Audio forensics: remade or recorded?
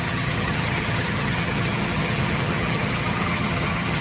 remade